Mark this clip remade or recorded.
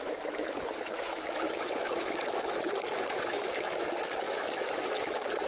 remade